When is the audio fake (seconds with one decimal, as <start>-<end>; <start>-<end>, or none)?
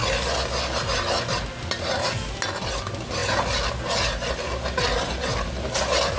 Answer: none